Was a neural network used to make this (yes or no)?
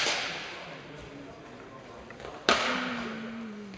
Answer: no